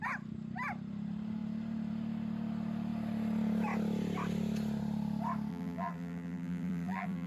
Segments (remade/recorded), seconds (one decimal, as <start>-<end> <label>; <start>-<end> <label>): 0.0-5.5 recorded; 5.5-7.3 remade